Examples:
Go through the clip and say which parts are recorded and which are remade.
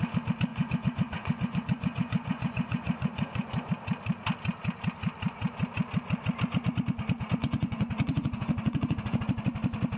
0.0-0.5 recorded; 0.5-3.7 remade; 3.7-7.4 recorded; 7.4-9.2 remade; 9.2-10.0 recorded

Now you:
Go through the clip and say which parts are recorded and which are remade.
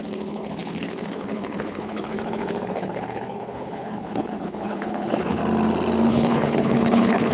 0.0-5.4 remade; 5.4-6.1 recorded; 6.1-7.3 remade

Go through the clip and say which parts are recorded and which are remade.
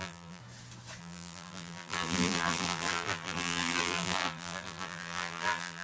0.0-0.4 remade; 0.4-1.0 recorded; 1.0-5.8 remade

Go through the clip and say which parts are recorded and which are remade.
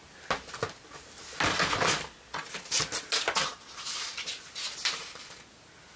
0.0-6.0 recorded